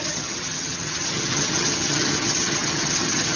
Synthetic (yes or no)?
yes